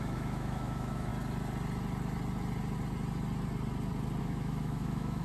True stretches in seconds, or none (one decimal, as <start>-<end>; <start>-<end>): 1.1-4.2